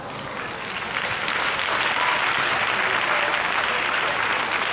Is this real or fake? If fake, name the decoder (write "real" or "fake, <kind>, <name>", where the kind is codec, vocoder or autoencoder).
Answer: real